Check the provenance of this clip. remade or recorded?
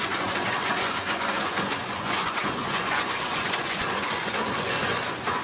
remade